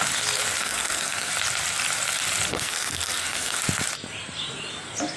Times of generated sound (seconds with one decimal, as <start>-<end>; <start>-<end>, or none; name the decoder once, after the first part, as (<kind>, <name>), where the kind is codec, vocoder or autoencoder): 0.6-1.3 (codec, SNAC); 2.5-3.6